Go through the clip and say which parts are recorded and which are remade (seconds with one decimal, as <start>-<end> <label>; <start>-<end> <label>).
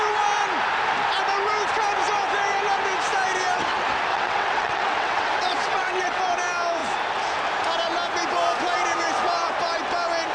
0.0-4.1 recorded; 4.1-6.2 remade; 6.2-10.3 recorded